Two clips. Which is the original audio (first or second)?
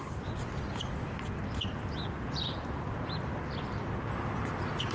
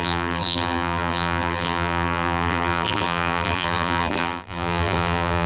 first